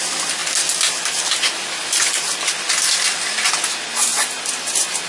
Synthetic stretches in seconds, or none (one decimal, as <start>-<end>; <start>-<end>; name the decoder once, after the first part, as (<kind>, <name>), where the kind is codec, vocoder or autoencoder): 0.4-2.2 (vocoder, BigVGAN v2); 4.1-5.1